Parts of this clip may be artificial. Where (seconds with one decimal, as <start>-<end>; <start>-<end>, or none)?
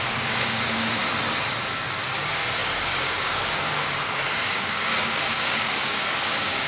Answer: 0.0-1.0; 2.2-6.7